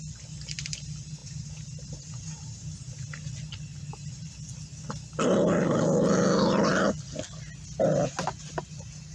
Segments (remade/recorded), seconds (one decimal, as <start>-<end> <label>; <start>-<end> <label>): 0.0-1.2 recorded; 1.2-3.3 remade; 3.3-3.7 recorded; 3.7-4.3 remade; 4.3-9.1 recorded